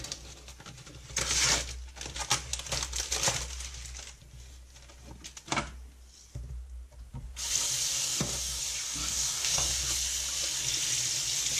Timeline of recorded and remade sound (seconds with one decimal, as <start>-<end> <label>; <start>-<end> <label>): 0.0-7.9 recorded; 7.9-8.6 remade; 8.6-9.0 recorded; 9.0-9.8 remade; 9.8-11.6 recorded